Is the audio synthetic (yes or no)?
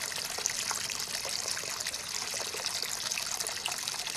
no